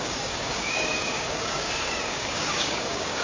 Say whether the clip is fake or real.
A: fake